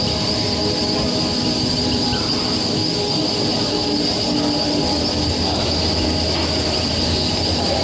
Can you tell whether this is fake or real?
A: real